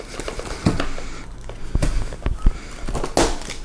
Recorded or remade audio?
recorded